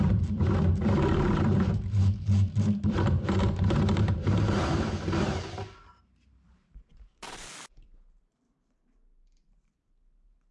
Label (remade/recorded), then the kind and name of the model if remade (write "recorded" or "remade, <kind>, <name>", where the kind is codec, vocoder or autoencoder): remade, vocoder, BigVGAN v2